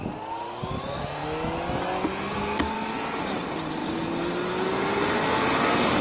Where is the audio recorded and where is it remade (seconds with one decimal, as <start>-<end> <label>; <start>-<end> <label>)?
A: 0.0-6.0 recorded